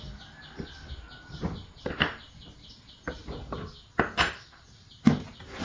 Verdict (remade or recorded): recorded